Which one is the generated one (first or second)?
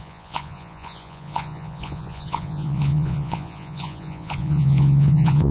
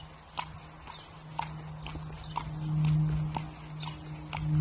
first